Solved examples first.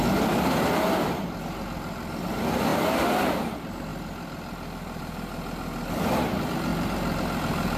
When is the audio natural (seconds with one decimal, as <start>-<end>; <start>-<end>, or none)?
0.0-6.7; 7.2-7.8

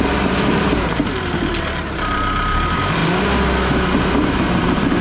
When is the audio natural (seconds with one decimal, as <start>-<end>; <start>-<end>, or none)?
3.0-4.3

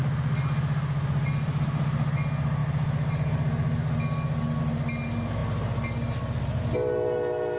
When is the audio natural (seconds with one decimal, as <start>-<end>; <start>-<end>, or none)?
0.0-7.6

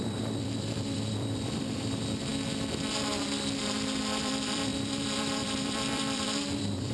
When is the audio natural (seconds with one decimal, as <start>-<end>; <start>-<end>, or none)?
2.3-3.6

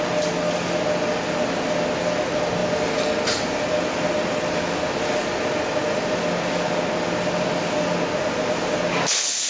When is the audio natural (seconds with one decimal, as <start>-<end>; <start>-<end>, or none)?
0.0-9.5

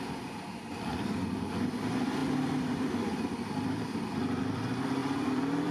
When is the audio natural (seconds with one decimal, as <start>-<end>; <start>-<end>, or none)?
none

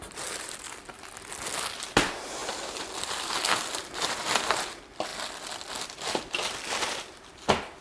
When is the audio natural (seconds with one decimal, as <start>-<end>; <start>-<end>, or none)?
5.1-6.2